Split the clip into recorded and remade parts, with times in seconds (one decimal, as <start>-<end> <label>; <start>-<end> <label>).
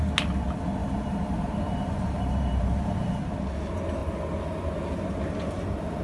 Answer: 0.0-0.8 recorded; 0.8-3.2 remade; 3.2-6.0 recorded